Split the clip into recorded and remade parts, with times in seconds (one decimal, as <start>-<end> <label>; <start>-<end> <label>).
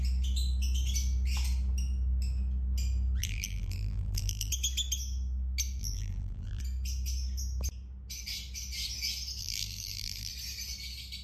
0.0-3.2 recorded; 3.2-4.5 remade; 4.5-5.8 recorded; 5.8-6.6 remade; 6.6-9.4 recorded; 9.4-10.3 remade; 10.3-11.2 recorded